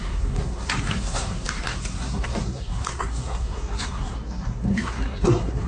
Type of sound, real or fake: fake